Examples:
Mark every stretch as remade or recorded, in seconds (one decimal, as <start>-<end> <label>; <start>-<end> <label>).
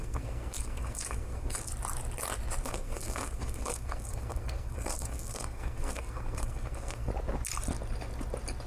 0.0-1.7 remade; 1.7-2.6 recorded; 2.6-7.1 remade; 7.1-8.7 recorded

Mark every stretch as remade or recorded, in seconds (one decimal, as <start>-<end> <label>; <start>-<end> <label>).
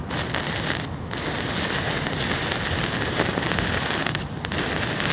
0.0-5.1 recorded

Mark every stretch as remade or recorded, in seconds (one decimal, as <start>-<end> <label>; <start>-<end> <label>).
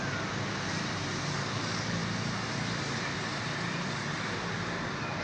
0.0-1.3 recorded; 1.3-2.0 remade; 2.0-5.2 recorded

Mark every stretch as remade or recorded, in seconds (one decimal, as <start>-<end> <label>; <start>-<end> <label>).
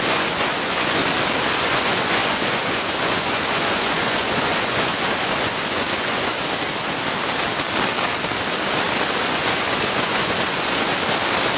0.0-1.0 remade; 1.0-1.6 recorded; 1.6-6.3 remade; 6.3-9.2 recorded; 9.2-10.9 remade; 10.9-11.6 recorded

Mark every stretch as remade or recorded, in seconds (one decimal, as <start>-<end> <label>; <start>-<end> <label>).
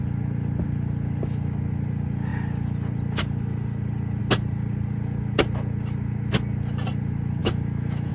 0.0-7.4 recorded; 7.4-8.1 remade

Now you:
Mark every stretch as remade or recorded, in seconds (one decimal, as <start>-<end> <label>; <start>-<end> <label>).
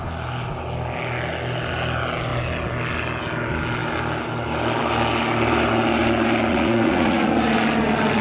0.0-6.5 recorded; 6.5-7.3 remade; 7.3-8.2 recorded